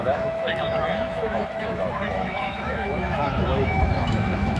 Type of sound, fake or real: fake